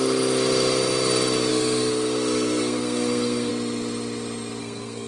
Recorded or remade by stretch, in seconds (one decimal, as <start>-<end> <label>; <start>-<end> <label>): 0.0-1.5 recorded; 1.5-3.5 remade; 3.5-4.6 recorded; 4.6-5.1 remade

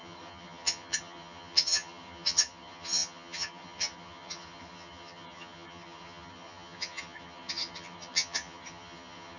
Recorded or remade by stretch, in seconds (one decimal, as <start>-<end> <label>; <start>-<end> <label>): 0.0-9.4 remade

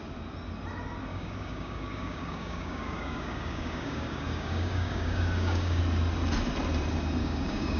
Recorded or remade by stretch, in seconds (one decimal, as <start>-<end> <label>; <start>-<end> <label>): 0.0-1.1 recorded; 1.1-5.8 remade; 5.8-7.2 recorded; 7.2-7.8 remade

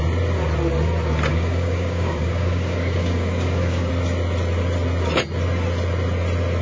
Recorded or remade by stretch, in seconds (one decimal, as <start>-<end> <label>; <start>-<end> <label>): 0.0-1.3 recorded; 1.3-3.9 remade; 3.9-6.6 recorded

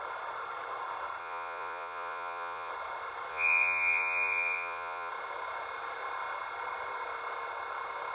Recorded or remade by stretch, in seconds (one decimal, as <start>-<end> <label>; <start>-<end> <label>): 0.0-1.2 recorded; 1.2-2.7 remade; 2.7-3.3 recorded; 3.3-5.1 remade; 5.1-8.1 recorded